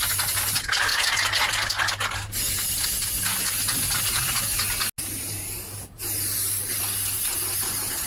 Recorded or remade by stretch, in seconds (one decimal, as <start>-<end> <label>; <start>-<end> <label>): 0.0-8.1 recorded